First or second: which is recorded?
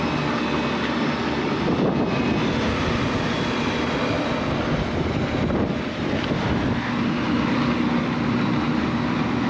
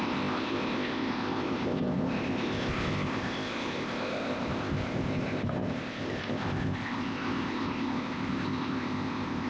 first